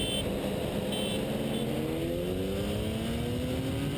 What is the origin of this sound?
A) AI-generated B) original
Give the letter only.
B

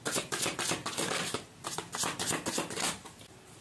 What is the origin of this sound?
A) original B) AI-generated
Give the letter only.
A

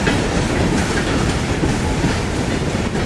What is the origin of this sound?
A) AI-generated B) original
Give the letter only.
B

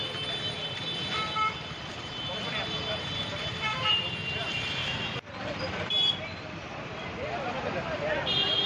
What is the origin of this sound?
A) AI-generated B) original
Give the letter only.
A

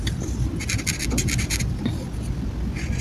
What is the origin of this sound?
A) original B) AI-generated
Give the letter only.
A